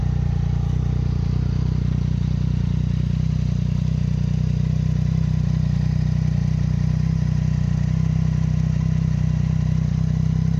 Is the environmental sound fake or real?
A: real